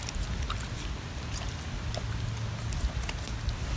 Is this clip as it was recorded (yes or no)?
yes